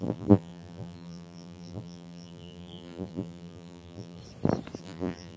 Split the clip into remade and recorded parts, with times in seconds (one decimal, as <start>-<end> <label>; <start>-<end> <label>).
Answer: 0.0-4.2 remade; 4.2-4.8 recorded; 4.8-5.4 remade